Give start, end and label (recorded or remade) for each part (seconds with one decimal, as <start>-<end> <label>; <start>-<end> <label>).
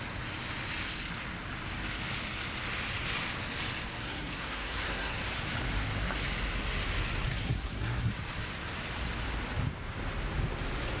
0.0-4.0 recorded; 4.0-5.2 remade; 5.2-7.3 recorded; 7.3-8.1 remade; 8.1-11.0 recorded